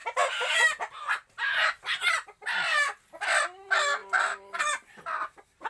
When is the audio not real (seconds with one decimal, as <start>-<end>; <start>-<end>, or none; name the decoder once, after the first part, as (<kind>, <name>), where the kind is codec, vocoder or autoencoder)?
none